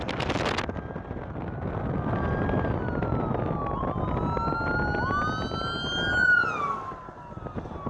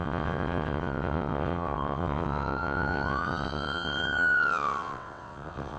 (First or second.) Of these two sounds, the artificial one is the second